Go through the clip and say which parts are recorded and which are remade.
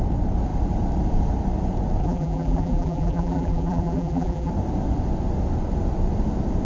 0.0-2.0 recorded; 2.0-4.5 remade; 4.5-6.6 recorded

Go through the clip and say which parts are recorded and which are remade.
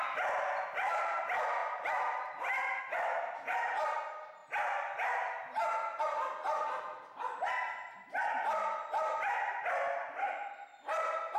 0.0-1.6 recorded; 1.6-2.8 remade; 2.8-4.4 recorded; 4.4-6.0 remade; 6.0-11.4 recorded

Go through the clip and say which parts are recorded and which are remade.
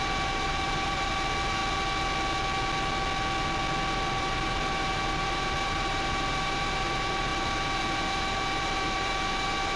0.0-1.6 remade; 1.6-4.2 recorded; 4.2-9.8 remade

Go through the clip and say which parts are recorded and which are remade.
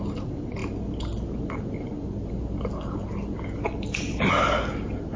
0.0-5.2 recorded